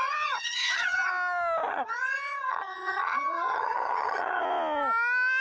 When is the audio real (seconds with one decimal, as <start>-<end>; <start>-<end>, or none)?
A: 1.1-1.7; 4.4-5.4